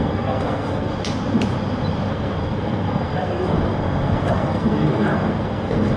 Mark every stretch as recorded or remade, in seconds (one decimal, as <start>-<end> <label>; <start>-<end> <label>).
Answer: 0.0-0.9 remade; 0.9-2.1 recorded; 2.1-6.0 remade